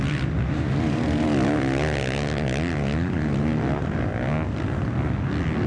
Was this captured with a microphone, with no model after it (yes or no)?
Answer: yes